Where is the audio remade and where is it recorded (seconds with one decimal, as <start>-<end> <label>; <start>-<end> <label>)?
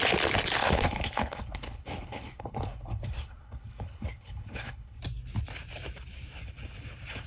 0.0-0.6 recorded; 0.6-5.0 remade; 5.0-7.3 recorded